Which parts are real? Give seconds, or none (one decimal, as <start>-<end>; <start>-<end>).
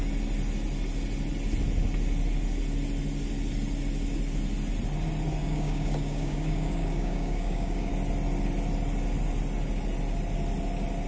0.0-5.4; 7.9-11.1